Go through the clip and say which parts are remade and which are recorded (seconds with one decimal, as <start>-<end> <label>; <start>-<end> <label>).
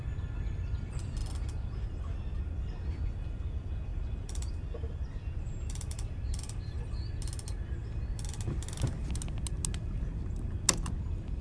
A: 0.0-1.2 recorded; 1.2-2.0 remade; 2.0-3.9 recorded; 3.9-6.8 remade; 6.8-11.4 recorded